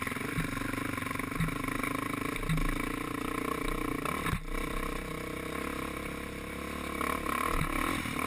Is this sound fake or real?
real